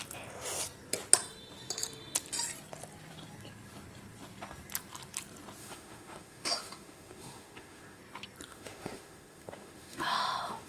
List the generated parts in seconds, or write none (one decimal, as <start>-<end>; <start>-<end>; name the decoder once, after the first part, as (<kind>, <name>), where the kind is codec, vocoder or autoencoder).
5.6-8.0 (autoencoder, DAC-VAE); 8.5-10.7